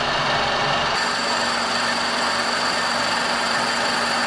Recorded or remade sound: recorded